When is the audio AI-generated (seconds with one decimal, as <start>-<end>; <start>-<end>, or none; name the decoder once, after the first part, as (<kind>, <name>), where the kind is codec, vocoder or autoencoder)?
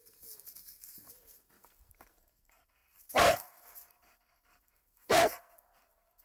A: 0.0-6.2 (codec, SNAC)